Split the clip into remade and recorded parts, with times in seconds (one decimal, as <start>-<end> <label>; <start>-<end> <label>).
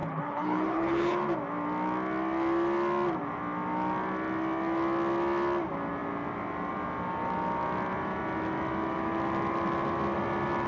0.0-1.2 remade; 1.2-10.7 recorded